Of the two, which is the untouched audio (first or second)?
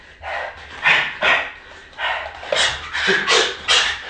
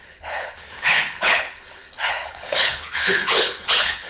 first